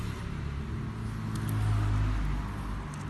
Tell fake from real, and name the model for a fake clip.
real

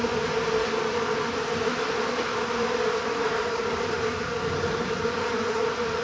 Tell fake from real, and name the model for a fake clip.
fake, vocoder, BigVGAN v2